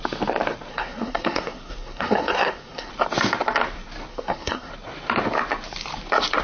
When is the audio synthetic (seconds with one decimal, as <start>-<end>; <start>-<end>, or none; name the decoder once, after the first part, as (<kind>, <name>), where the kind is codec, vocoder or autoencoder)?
0.7-2.9 (codec, SNAC); 4.1-4.7